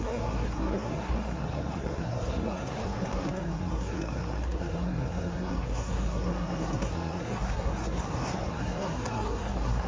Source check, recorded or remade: remade